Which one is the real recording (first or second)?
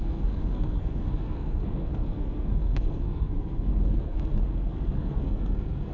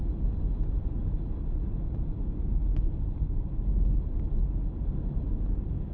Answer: second